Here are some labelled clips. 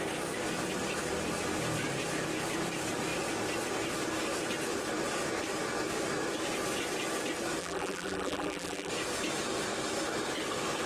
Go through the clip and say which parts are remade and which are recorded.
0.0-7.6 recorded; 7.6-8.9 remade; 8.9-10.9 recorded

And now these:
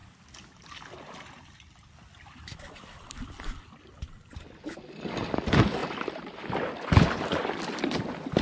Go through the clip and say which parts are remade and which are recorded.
0.0-5.8 recorded; 5.8-6.4 remade; 6.4-8.4 recorded